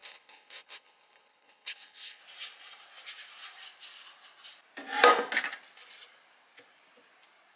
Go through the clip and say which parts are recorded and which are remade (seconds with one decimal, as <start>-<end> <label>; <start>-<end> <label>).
0.0-2.2 remade; 2.2-7.6 recorded